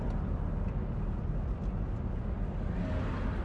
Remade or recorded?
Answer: recorded